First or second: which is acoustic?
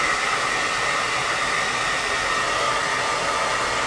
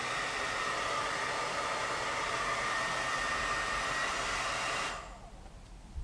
first